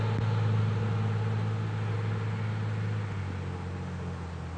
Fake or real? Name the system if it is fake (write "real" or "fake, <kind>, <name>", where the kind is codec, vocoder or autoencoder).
real